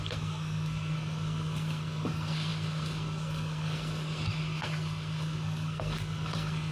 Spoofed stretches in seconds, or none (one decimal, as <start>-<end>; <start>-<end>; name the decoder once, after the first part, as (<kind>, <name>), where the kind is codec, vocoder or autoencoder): 0.0-6.7 (codec, SNAC)